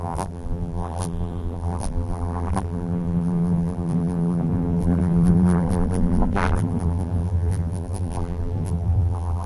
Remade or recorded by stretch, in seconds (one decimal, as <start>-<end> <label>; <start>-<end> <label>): 0.0-9.5 remade